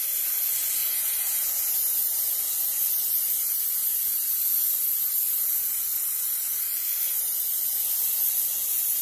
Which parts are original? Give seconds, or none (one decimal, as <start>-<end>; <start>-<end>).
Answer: 0.0-0.8; 1.7-9.0